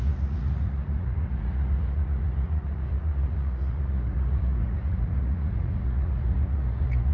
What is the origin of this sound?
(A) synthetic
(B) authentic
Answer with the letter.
A